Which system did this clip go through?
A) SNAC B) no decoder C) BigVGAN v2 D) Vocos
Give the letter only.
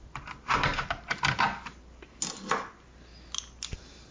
B